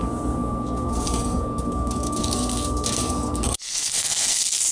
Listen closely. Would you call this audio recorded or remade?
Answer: remade